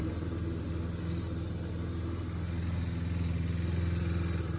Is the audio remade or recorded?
recorded